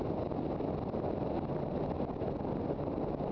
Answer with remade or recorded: recorded